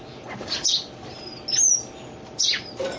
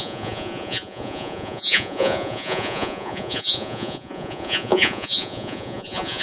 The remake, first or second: second